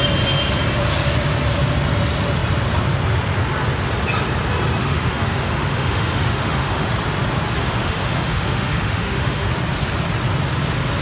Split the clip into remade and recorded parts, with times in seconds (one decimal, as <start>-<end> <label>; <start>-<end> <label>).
0.0-4.8 recorded; 4.8-6.9 remade; 6.9-7.8 recorded; 7.8-9.5 remade; 9.5-11.0 recorded